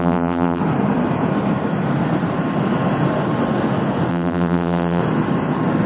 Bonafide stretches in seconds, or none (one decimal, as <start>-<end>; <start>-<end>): 0.6-4.1; 5.0-5.9